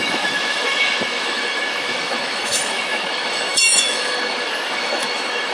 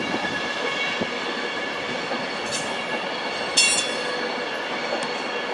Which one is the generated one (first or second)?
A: first